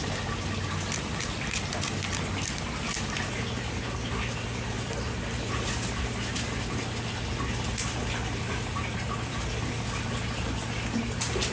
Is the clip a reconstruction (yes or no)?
no